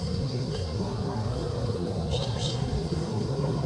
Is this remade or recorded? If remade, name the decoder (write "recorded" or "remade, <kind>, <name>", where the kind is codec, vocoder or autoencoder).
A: remade, codec, SNAC